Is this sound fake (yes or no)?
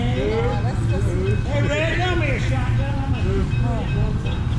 no